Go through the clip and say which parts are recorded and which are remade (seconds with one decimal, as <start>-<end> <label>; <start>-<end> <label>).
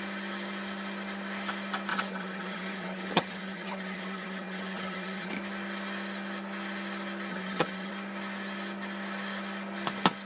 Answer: 0.0-1.9 recorded; 1.9-5.3 remade; 5.3-7.3 recorded; 7.3-7.9 remade; 7.9-10.3 recorded